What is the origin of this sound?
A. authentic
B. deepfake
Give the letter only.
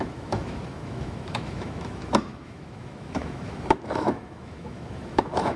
B